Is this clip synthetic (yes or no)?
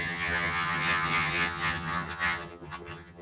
yes